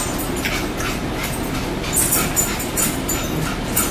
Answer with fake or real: real